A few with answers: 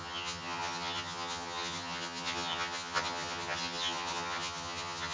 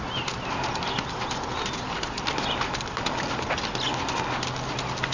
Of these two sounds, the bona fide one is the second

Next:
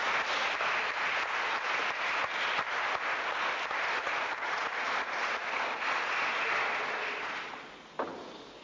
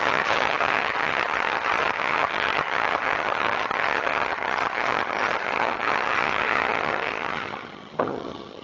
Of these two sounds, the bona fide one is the first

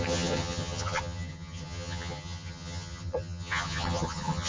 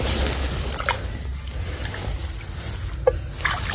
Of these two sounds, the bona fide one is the second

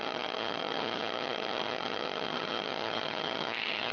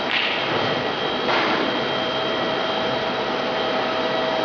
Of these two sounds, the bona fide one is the second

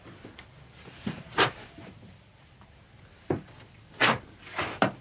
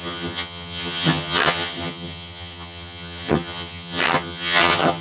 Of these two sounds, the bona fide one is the first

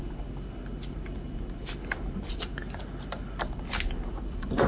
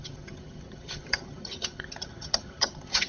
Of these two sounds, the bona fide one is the first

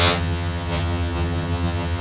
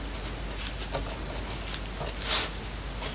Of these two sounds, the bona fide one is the second